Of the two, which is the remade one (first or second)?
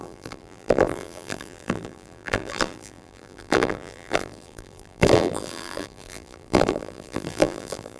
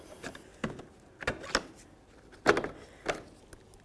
first